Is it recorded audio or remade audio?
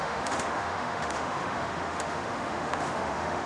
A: remade